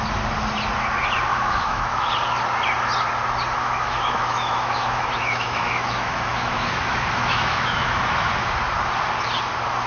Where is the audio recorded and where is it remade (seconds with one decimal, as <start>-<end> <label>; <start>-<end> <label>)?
0.0-1.3 recorded; 1.3-2.1 remade; 2.1-3.6 recorded; 3.6-8.3 remade; 8.3-9.9 recorded